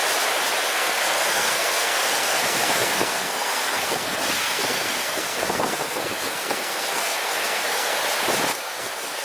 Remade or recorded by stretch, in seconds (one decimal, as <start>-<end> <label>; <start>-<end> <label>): 0.0-0.7 recorded; 0.7-8.0 remade; 8.0-8.5 recorded; 8.5-9.2 remade